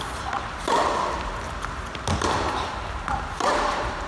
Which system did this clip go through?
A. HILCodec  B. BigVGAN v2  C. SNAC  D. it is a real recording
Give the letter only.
D